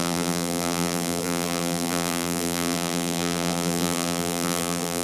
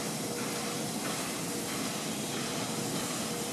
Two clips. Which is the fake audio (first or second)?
first